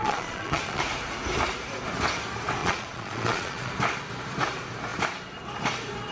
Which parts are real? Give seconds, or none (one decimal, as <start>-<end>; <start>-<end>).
0.8-2.6; 3.7-6.1